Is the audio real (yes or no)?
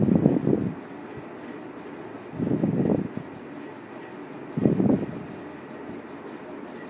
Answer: yes